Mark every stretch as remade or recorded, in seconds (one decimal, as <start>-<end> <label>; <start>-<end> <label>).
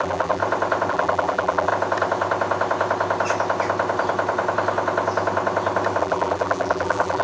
0.0-0.4 remade; 0.4-0.9 recorded; 0.9-1.7 remade; 1.7-6.0 recorded; 6.0-7.2 remade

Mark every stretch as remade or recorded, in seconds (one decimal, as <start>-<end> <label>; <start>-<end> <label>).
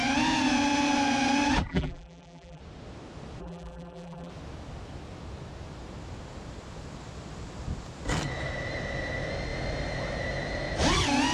0.0-1.7 recorded; 1.7-2.6 remade; 2.6-3.4 recorded; 3.4-4.3 remade; 4.3-11.3 recorded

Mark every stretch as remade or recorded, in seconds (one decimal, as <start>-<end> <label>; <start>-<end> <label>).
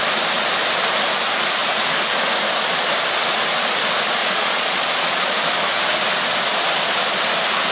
0.0-4.2 recorded; 4.2-5.3 remade; 5.3-7.7 recorded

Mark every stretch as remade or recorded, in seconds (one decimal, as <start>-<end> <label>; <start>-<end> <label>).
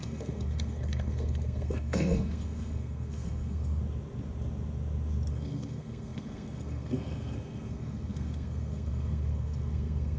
0.0-3.8 remade; 3.8-5.3 recorded; 5.3-10.2 remade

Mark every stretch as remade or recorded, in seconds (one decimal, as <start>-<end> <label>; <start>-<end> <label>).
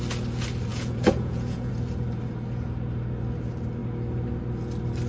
0.0-0.7 recorded; 0.7-1.7 remade; 1.7-5.1 recorded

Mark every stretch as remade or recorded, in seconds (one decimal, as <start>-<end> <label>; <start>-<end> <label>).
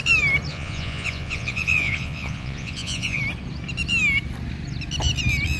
0.0-0.5 recorded; 0.5-3.2 remade; 3.2-5.6 recorded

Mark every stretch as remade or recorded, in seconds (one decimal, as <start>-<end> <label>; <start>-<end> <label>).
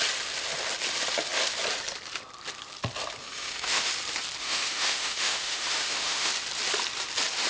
0.0-3.2 recorded; 3.2-3.9 remade; 3.9-4.4 recorded; 4.4-6.3 remade; 6.3-7.5 recorded